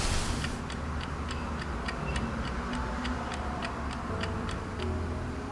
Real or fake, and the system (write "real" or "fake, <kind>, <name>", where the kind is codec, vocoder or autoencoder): real